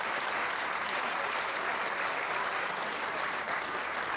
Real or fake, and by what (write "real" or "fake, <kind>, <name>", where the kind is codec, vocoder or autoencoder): real